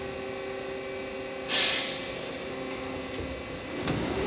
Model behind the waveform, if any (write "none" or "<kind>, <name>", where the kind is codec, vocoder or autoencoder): none